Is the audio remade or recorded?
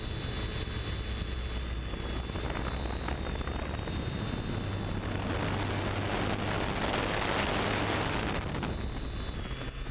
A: recorded